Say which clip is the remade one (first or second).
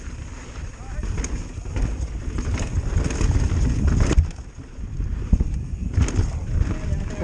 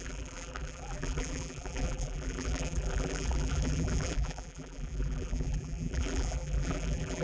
second